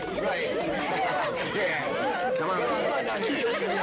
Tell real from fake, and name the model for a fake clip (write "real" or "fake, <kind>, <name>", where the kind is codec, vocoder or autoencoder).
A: real